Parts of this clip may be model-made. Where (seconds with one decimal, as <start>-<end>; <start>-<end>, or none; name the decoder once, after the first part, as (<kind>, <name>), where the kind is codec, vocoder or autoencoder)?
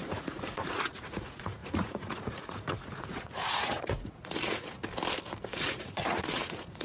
0.0-4.8 (vocoder, Vocos); 5.6-6.8